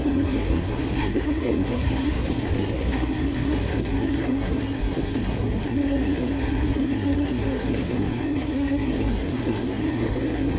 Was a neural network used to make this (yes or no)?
yes